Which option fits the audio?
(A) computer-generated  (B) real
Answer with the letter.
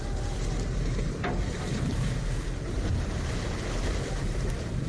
A